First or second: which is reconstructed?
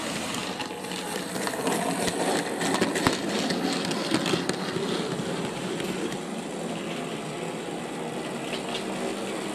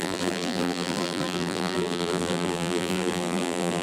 second